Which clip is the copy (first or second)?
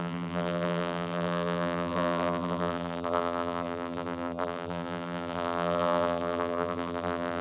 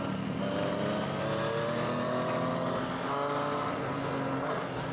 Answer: first